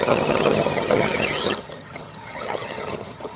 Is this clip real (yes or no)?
no